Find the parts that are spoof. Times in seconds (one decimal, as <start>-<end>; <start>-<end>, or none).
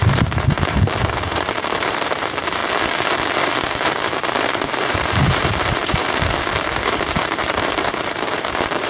0.0-2.6; 3.4-8.9